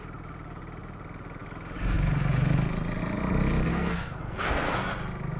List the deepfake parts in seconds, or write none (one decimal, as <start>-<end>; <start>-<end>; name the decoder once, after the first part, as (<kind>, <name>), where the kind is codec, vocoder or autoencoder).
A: 3.7-4.9 (codec, SNAC)